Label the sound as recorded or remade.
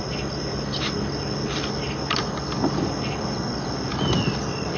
recorded